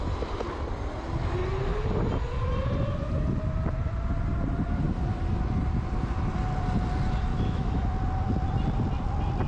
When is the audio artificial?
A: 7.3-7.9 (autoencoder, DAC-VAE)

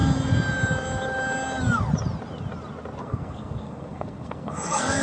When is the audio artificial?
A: 3.0-5.0 (codec, SNAC)

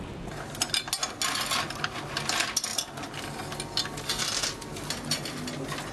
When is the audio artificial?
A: none

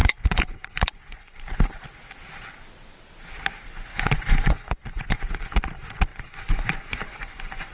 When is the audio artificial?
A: 0.0-1.4 (vocoder, Vocos); 3.9-5.6; 6.1-7.7

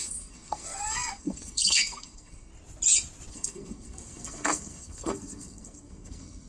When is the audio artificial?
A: 0.0-2.5 (codec, SNAC); 3.3-6.5